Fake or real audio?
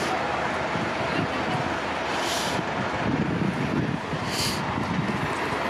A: real